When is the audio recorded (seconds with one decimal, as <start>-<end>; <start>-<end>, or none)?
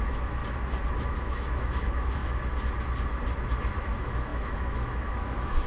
0.4-1.0; 2.2-3.8